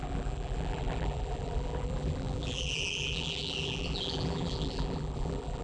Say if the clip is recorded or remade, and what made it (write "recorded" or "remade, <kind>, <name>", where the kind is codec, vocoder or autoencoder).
remade, vocoder, BigVGAN v2